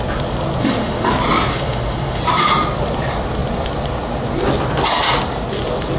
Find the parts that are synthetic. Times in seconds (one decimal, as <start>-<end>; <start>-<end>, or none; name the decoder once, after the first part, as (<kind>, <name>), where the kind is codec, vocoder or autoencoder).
0.6-1.1 (autoencoder, DAC-VAE); 1.5-2.2